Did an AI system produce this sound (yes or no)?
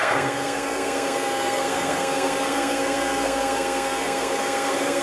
yes